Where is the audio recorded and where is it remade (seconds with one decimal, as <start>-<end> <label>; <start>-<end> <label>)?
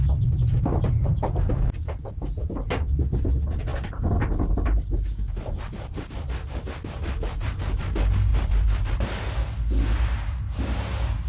0.0-11.3 recorded